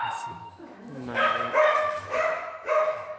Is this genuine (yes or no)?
no